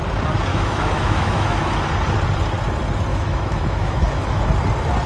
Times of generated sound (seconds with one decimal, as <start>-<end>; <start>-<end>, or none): 0.5-1.6; 3.1-4.5